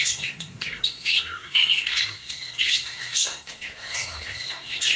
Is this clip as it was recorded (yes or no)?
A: no